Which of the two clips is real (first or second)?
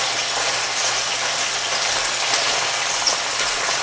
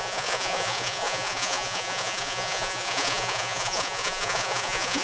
first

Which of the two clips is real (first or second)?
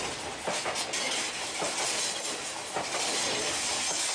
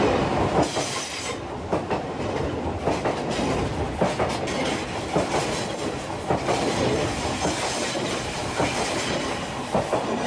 first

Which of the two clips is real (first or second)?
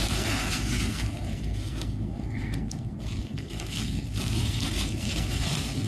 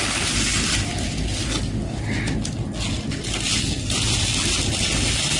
second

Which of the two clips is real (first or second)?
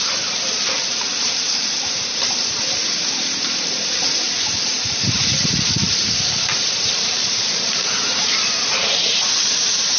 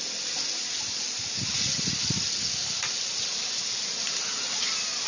second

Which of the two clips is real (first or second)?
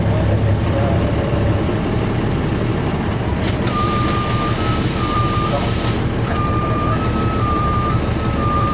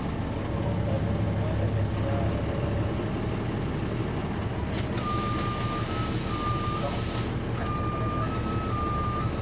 second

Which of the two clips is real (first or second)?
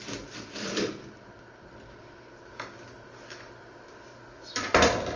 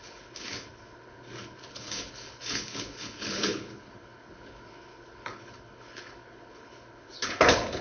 first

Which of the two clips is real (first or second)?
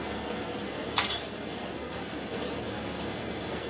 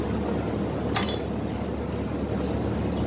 second